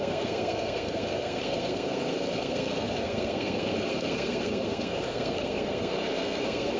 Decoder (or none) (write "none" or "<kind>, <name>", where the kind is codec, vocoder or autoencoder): codec, SNAC